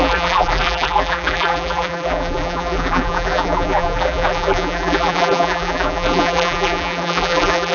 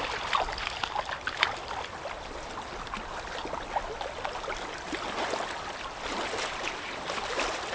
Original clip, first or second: second